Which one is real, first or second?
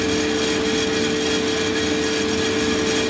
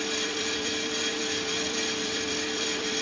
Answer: first